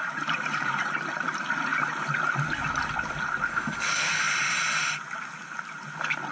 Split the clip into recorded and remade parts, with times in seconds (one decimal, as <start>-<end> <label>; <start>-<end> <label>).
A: 0.0-3.5 recorded; 3.5-4.2 remade; 4.2-6.3 recorded